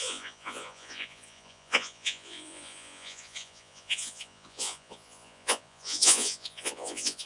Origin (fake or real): fake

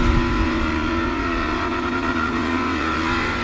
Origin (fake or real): fake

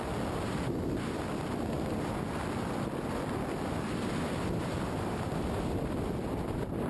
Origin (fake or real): real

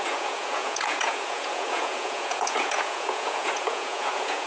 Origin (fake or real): fake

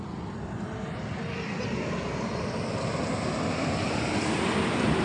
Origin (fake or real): real